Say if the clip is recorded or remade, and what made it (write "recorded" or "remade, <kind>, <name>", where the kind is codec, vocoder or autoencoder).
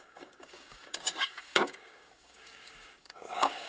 remade, codec, DAC